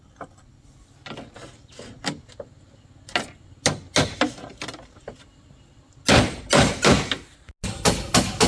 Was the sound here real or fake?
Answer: real